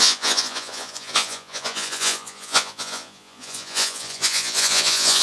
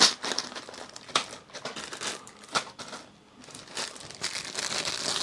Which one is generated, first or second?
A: first